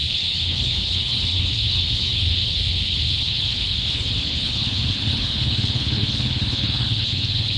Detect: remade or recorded remade